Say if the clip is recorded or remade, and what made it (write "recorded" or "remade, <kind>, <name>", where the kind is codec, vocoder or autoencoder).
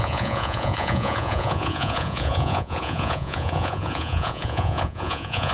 remade, vocoder, Vocos